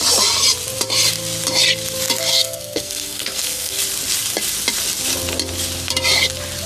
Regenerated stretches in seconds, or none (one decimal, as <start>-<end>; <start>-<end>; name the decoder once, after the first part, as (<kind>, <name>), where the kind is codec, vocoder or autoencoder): 2.3-3.8 (codec, SNAC)